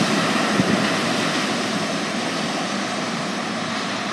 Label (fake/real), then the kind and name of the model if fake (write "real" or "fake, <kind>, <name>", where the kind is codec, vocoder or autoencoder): real